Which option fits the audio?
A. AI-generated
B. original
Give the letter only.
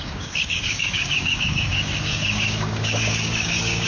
A